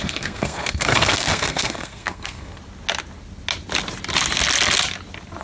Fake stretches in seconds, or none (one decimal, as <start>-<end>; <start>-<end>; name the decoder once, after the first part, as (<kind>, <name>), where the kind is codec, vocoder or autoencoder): 0.0-2.6 (codec, SNAC)